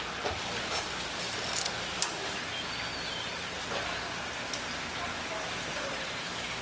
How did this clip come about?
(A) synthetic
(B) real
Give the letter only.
B